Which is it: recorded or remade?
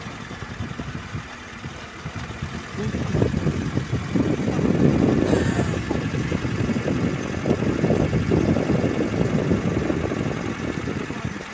recorded